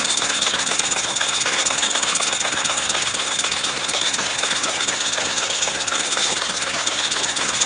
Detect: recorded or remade remade